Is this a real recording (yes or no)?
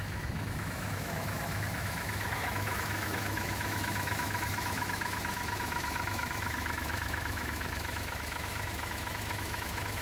no